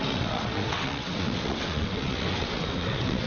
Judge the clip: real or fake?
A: fake